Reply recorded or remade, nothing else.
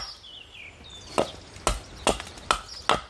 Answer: recorded